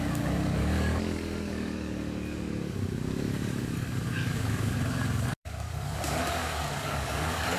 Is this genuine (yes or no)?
no